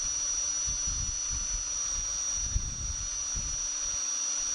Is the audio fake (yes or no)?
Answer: no